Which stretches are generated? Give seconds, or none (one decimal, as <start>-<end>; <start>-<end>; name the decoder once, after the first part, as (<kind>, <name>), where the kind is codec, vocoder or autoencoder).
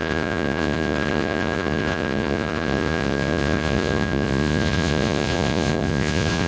0.0-6.5 (vocoder, Vocos)